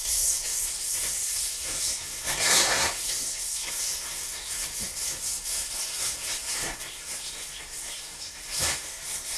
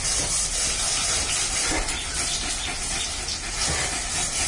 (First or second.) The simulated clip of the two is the first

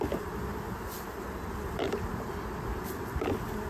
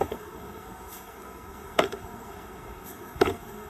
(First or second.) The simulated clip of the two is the second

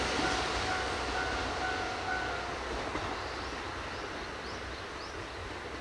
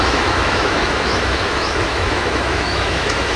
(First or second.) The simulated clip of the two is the second